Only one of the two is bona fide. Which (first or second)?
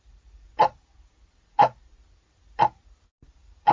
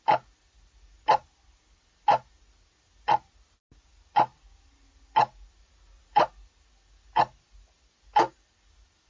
second